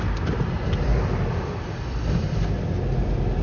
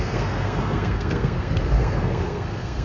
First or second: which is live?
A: first